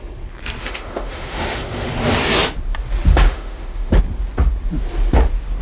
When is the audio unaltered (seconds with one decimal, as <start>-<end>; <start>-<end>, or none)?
0.0-0.6; 1.9-3.1; 4.0-5.6